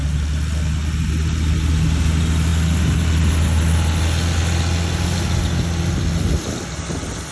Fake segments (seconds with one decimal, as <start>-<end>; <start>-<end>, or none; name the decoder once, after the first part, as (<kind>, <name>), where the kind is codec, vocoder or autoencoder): none